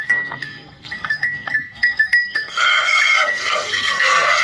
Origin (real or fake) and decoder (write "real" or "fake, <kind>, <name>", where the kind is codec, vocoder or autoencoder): fake, codec, SNAC